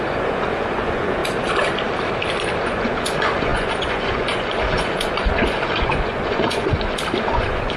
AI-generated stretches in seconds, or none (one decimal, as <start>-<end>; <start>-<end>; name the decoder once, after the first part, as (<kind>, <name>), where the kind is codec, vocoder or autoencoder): 0.0-1.2 (vocoder, Vocos); 2.6-6.7; 7.2-7.8